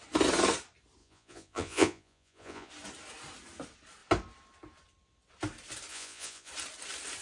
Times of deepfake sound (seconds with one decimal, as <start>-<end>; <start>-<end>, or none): 1.0-2.7; 5.9-6.5